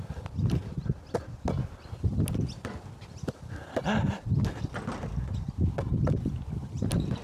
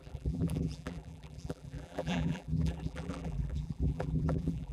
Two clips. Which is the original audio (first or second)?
first